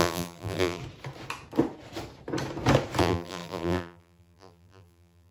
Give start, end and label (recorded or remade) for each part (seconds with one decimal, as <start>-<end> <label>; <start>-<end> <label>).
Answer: 0.0-0.8 remade; 0.8-3.0 recorded; 3.0-5.3 remade